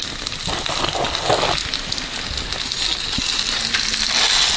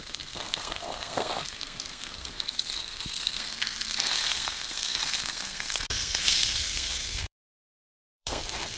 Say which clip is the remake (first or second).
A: second